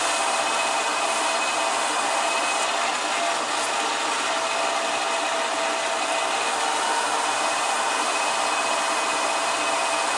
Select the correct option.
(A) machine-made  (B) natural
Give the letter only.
B